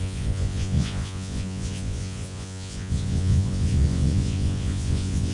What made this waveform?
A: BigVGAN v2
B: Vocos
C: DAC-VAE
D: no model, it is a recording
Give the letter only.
B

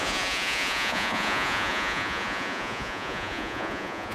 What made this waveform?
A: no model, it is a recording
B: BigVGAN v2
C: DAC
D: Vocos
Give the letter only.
D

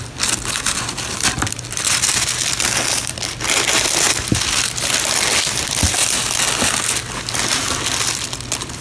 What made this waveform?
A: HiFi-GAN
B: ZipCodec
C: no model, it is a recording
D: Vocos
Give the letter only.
C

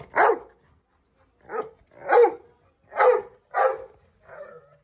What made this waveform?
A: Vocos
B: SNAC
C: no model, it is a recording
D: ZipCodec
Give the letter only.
C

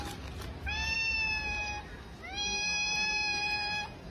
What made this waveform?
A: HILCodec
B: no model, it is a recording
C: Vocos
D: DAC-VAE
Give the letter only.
B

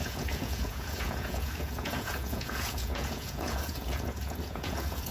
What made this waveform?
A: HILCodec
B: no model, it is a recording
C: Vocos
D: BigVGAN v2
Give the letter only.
C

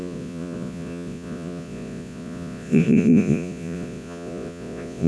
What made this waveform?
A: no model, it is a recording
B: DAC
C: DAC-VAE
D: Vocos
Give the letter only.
D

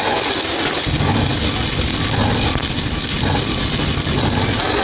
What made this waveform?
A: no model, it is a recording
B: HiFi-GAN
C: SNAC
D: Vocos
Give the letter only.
A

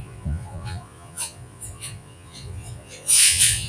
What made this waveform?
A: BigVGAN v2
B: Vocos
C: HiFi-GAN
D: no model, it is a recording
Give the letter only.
B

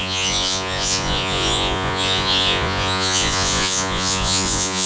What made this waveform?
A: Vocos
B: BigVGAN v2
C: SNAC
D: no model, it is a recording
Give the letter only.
A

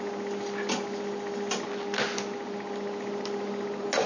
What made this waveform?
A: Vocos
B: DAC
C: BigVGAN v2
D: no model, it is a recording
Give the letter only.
D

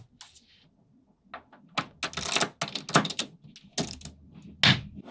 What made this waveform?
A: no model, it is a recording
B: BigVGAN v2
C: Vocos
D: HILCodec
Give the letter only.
A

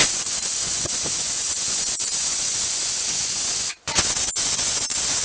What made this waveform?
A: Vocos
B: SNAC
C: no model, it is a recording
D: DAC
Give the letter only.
A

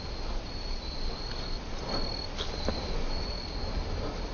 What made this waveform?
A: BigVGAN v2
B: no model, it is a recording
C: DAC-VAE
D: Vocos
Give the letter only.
B